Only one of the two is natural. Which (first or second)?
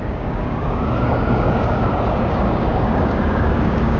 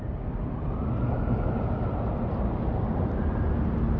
second